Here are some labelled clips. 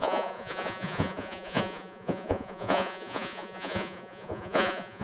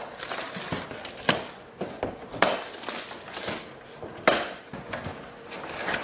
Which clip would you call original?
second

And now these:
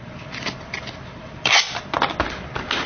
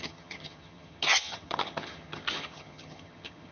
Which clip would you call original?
first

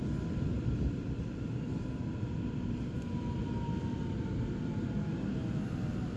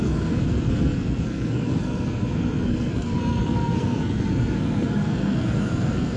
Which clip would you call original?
first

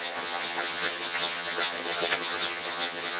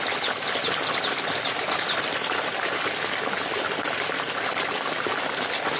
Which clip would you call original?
second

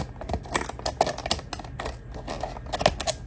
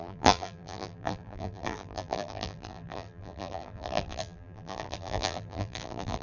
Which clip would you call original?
first